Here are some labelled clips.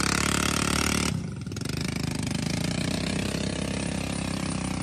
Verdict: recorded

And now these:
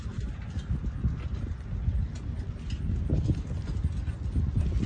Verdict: recorded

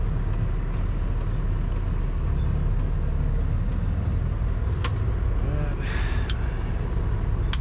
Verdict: recorded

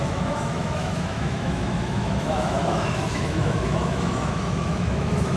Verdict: remade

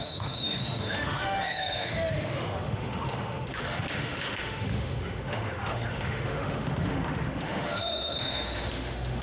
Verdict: remade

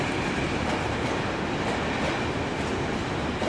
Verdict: recorded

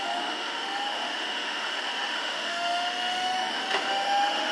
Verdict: remade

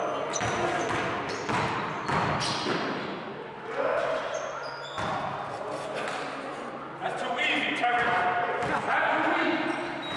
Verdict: recorded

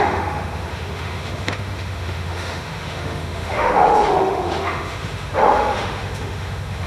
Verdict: remade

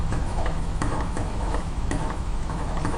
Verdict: remade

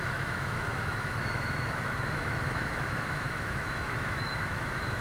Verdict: remade